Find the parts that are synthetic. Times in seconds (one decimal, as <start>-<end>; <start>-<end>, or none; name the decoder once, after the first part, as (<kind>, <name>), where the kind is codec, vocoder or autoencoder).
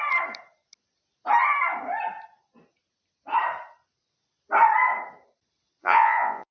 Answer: 5.8-6.5 (vocoder, Vocos)